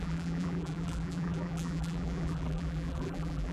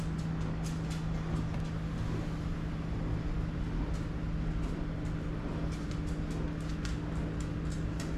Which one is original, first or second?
second